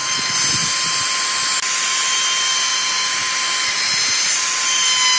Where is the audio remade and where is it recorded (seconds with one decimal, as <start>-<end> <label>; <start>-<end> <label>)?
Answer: 0.0-5.2 recorded